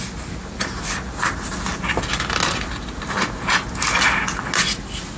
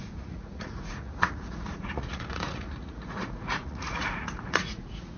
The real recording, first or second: first